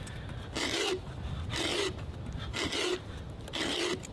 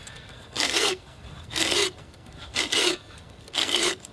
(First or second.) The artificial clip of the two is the second